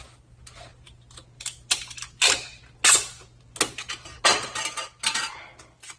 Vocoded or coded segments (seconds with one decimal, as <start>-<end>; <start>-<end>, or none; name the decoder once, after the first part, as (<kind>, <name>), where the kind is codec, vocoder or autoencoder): none